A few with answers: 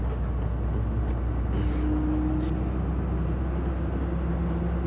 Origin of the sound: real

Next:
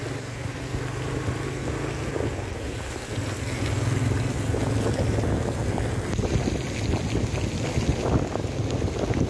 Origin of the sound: real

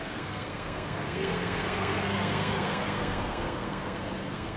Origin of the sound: fake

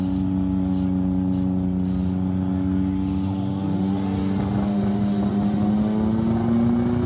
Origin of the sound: real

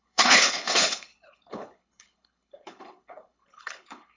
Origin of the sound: fake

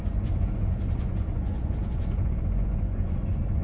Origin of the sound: fake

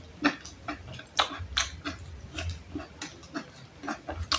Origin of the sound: real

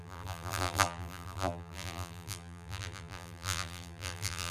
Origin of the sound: fake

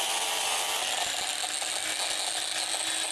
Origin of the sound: real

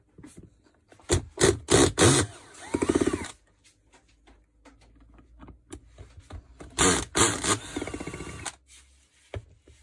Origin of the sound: real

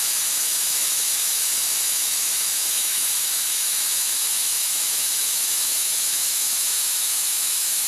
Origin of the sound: fake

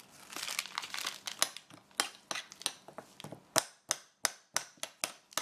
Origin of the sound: real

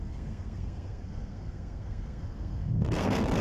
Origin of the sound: fake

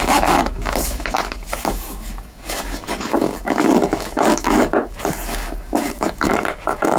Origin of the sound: fake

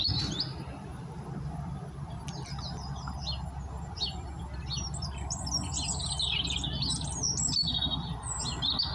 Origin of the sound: real